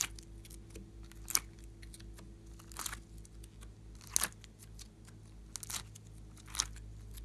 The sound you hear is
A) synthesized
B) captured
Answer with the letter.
B